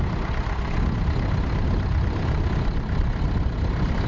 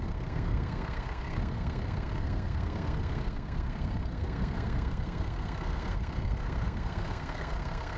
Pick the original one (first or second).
first